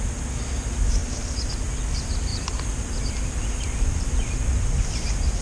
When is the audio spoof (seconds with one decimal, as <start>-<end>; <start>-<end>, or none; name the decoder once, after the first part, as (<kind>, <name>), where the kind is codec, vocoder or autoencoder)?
1.0-1.5 (vocoder, BigVGAN v2); 2.3-4.3